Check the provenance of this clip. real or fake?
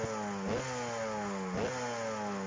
real